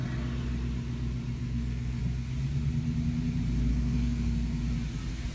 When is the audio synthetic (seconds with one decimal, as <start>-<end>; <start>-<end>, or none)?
1.4-2.0; 3.7-4.6